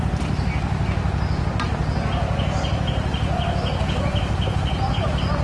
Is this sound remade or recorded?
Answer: recorded